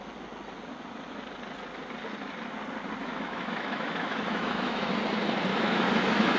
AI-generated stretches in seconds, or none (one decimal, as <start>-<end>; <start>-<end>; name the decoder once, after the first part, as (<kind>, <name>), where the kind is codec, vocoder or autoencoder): 3.0-4.9 (autoencoder, DAC-VAE); 5.5-6.4